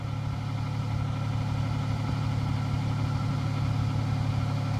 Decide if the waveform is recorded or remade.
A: recorded